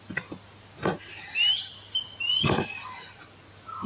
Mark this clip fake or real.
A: real